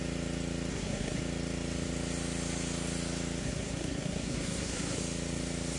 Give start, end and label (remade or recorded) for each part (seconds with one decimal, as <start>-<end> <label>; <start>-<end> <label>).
0.0-0.7 recorded; 0.7-1.2 remade; 1.2-3.4 recorded; 3.4-5.0 remade; 5.0-5.8 recorded

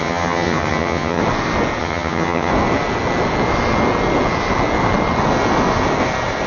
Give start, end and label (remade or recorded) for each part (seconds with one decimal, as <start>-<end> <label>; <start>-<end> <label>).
0.0-1.2 remade; 1.2-1.8 recorded; 1.8-2.5 remade; 2.5-6.5 recorded

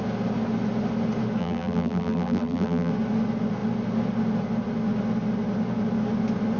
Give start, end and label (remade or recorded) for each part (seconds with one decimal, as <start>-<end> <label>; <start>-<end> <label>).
0.0-1.4 recorded; 1.4-2.9 remade; 2.9-6.6 recorded

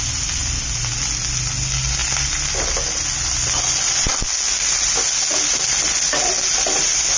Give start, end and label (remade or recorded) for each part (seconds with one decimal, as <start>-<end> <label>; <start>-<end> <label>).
0.0-7.2 recorded

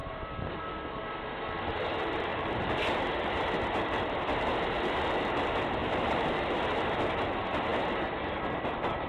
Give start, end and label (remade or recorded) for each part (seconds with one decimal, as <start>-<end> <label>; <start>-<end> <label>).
0.0-0.6 remade; 0.6-2.3 recorded; 2.3-3.1 remade; 3.1-5.8 recorded; 5.8-6.6 remade; 6.6-9.1 recorded

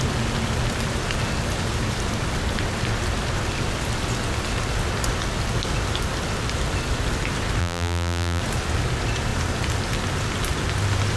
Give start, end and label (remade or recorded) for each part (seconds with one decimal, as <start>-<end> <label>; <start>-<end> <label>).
0.0-7.6 recorded; 7.6-8.4 remade; 8.4-11.2 recorded

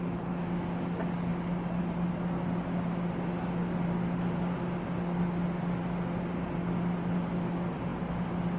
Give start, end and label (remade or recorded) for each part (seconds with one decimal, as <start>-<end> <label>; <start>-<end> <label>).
0.0-8.6 recorded